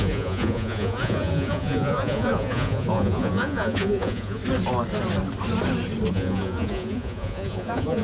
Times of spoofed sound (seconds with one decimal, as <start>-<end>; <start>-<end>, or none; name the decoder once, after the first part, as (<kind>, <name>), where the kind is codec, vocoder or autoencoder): 0.0-4.4 (vocoder, Vocos); 6.1-8.0